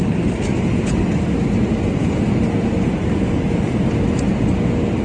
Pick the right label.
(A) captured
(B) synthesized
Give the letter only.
A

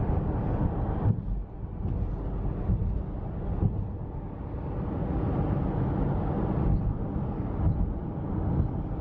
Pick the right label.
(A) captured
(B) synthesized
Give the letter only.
A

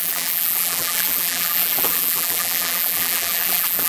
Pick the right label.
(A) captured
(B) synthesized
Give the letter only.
B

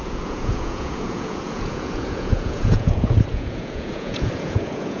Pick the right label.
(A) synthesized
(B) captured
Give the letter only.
A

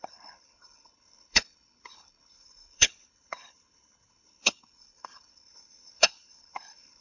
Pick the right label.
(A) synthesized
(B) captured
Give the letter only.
A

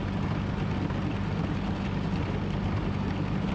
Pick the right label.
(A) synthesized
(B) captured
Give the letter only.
B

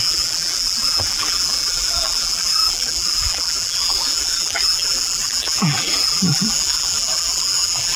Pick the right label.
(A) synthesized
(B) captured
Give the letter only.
A